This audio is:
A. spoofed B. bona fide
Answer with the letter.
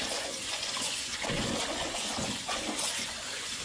A